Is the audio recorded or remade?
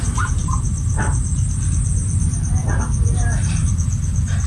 remade